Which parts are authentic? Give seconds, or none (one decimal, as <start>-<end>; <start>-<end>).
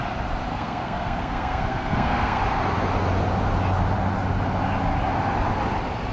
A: 0.0-0.5; 2.4-6.1